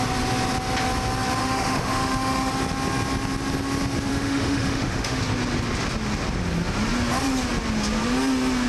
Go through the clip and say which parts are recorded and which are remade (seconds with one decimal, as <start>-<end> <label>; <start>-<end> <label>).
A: 0.0-1.4 recorded; 1.4-2.5 remade; 2.5-4.1 recorded; 4.1-5.2 remade; 5.2-8.7 recorded

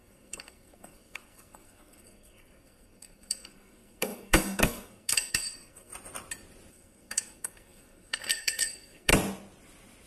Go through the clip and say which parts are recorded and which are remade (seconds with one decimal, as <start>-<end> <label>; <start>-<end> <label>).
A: 0.0-5.9 remade; 5.9-6.7 recorded; 6.7-9.1 remade; 9.1-10.1 recorded

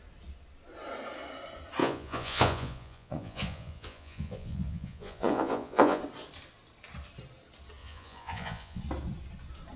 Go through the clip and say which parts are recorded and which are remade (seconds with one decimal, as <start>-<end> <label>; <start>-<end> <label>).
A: 0.0-1.8 recorded; 1.8-6.0 remade; 6.0-7.8 recorded; 7.8-8.8 remade; 8.8-9.8 recorded

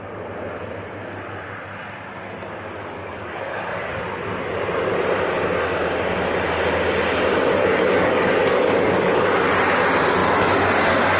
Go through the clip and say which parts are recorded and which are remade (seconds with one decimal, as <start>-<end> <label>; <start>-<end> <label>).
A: 0.0-3.0 recorded; 3.0-4.0 remade; 4.0-7.6 recorded; 7.6-9.5 remade; 9.5-11.2 recorded

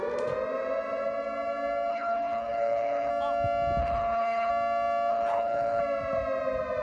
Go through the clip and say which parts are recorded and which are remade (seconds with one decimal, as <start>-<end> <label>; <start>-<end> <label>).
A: 0.0-1.9 recorded; 1.9-3.1 remade; 3.1-3.8 recorded; 3.8-4.5 remade; 4.5-5.1 recorded; 5.1-5.8 remade; 5.8-6.8 recorded

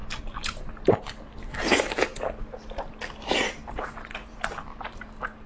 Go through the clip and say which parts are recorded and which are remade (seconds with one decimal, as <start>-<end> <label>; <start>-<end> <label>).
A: 0.0-3.3 recorded; 3.3-5.5 remade